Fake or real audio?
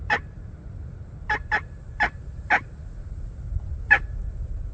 real